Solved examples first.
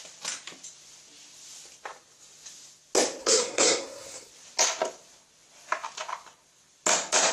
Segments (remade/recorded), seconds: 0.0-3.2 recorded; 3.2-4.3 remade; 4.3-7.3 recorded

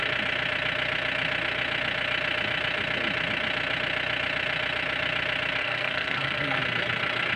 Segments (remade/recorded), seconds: 0.0-5.6 recorded; 5.6-6.6 remade; 6.6-7.4 recorded

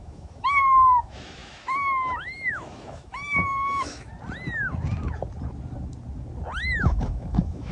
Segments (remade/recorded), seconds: 0.0-4.1 remade; 4.1-6.8 recorded; 6.8-7.7 remade